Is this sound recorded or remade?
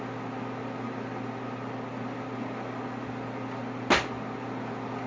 recorded